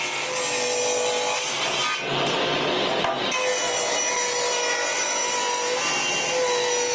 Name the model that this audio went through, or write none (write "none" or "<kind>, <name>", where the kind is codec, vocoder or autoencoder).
none